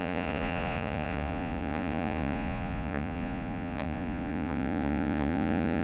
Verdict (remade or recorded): remade